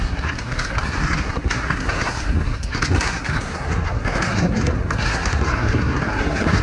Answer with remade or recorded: remade